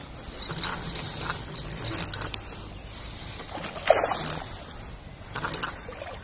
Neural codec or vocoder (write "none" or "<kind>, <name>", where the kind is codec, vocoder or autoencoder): none